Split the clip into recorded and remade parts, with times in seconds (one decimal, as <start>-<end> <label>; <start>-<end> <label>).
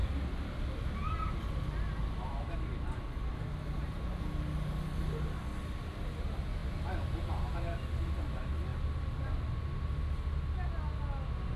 0.0-11.6 recorded